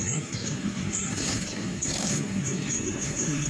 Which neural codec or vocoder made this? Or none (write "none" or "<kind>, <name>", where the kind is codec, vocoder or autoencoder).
codec, SNAC